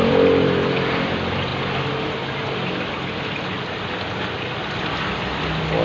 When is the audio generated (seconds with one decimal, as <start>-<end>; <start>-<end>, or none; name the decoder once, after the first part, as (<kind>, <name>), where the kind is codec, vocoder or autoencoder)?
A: none